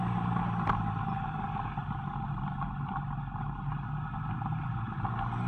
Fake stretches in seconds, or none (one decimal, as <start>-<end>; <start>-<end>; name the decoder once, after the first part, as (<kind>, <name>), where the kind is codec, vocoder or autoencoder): none